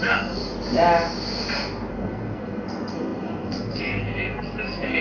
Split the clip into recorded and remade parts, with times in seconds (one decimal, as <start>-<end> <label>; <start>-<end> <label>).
0.0-0.4 remade; 0.4-1.9 recorded; 1.9-5.0 remade